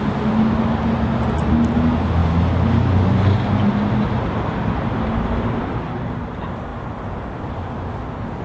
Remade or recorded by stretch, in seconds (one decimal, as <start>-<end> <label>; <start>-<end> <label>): 0.0-8.4 recorded

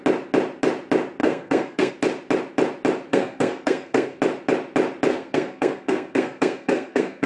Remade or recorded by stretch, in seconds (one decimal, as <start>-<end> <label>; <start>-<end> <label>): 0.0-1.2 recorded; 1.2-1.9 remade; 1.9-3.1 recorded; 3.1-4.2 remade; 4.2-5.1 recorded; 5.1-7.3 remade